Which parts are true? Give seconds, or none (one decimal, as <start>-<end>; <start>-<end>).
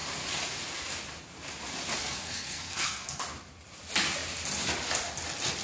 0.0-2.0; 3.2-5.6